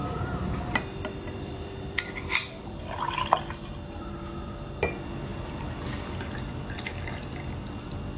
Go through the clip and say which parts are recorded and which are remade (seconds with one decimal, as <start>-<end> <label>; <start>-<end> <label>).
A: 0.0-3.4 remade; 3.4-5.3 recorded; 5.3-6.9 remade; 6.9-8.2 recorded

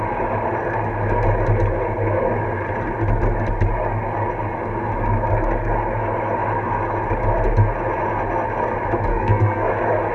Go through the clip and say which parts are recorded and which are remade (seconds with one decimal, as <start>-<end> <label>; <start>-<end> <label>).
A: 0.0-9.1 recorded; 9.1-9.7 remade; 9.7-10.1 recorded

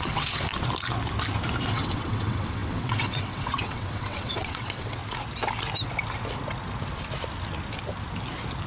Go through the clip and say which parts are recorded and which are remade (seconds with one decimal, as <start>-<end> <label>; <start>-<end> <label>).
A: 0.0-0.5 remade; 0.5-1.6 recorded; 1.6-5.0 remade; 5.0-8.7 recorded

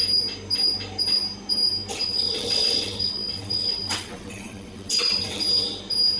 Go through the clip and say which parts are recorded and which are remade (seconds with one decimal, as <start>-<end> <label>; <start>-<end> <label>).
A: 0.0-1.9 recorded; 1.9-5.4 remade; 5.4-6.2 recorded

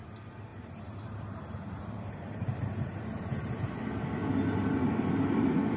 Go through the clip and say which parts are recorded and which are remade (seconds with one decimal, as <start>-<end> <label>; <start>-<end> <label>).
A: 0.0-0.5 recorded; 0.5-3.7 remade; 3.7-5.8 recorded

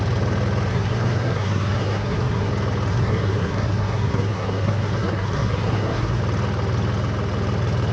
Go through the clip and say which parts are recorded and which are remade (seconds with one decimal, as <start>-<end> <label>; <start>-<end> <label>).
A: 0.0-0.7 recorded; 0.7-2.5 remade; 2.5-2.9 recorded; 2.9-6.2 remade; 6.2-7.9 recorded

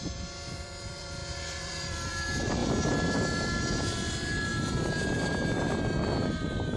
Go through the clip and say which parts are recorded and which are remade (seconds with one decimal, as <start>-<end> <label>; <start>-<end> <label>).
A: 0.0-2.6 remade; 2.6-3.3 recorded; 3.3-6.8 remade